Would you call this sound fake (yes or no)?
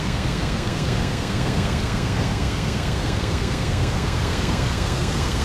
yes